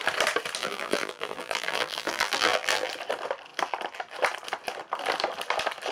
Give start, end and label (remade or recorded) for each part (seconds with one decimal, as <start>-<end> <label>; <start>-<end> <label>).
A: 0.0-0.6 recorded; 0.6-2.9 remade; 2.9-5.9 recorded